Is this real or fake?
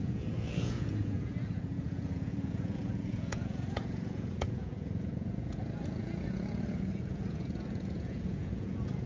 fake